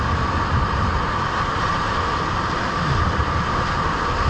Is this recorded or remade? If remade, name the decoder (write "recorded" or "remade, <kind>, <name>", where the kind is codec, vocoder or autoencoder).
recorded